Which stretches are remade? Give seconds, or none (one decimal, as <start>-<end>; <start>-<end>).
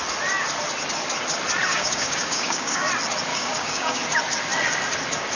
1.7-2.9; 3.3-4.0